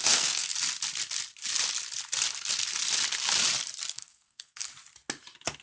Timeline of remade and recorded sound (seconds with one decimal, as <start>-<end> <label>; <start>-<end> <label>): 0.0-0.5 remade; 0.5-3.9 recorded; 3.9-4.7 remade; 4.7-5.6 recorded